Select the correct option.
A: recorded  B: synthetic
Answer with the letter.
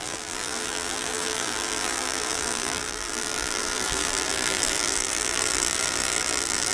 B